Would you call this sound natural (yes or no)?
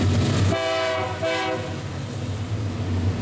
yes